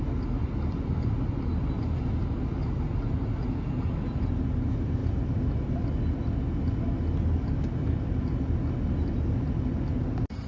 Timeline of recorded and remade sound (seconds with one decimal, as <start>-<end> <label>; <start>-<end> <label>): 0.0-10.5 recorded